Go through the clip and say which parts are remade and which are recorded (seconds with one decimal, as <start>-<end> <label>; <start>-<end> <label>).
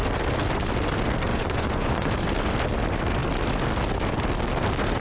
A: 0.0-1.3 recorded; 1.3-2.1 remade; 2.1-5.0 recorded